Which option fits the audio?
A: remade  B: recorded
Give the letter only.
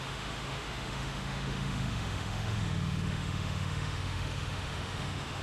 A